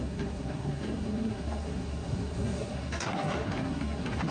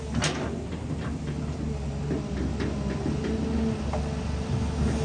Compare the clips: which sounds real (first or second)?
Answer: second